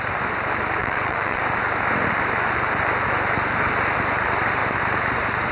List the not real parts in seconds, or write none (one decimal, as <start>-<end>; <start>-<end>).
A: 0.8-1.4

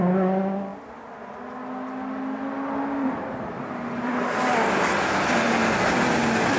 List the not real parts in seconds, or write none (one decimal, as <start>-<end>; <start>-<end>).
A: none

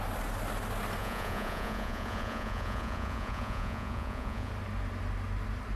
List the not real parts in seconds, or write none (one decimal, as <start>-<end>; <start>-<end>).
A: 1.0-4.5